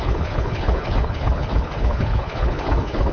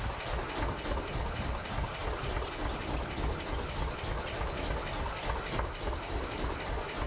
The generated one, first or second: first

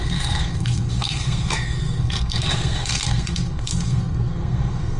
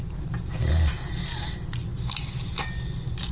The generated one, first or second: first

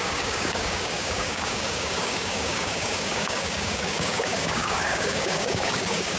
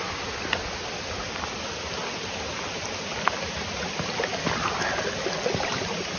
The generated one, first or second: first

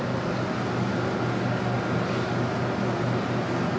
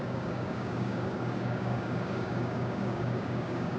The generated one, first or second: second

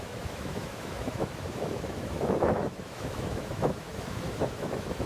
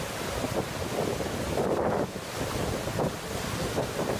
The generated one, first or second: first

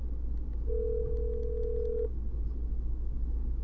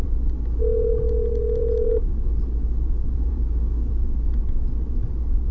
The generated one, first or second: second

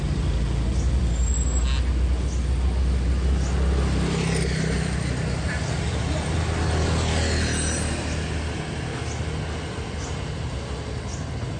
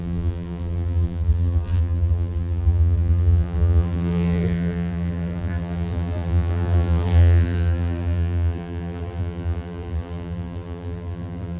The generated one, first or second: second